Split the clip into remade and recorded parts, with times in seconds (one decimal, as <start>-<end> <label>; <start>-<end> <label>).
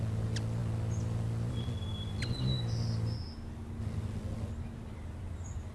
0.0-5.7 recorded